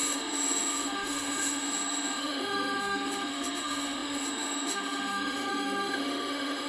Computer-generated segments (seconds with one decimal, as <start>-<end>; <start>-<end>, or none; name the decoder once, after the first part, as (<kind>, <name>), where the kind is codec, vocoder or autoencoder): 0.0-6.7 (autoencoder, DAC-VAE)